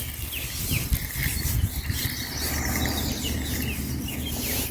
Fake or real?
real